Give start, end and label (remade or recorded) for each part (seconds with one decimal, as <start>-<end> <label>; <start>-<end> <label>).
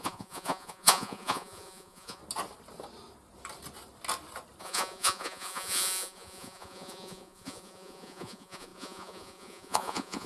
0.0-2.2 remade; 2.2-4.6 recorded; 4.6-10.3 remade